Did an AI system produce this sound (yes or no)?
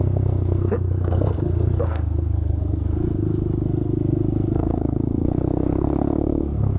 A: yes